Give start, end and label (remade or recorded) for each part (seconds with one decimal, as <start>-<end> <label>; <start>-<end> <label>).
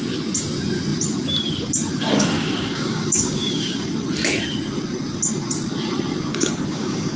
0.0-1.9 recorded; 1.9-3.9 remade; 3.9-6.3 recorded; 6.3-7.2 remade